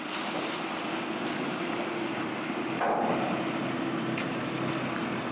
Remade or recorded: recorded